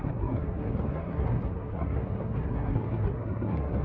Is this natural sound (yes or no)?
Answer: no